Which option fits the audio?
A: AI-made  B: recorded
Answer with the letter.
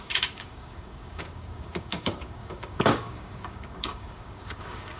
A